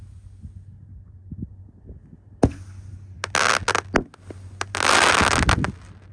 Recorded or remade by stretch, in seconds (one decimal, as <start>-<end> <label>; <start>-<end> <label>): 0.0-6.1 recorded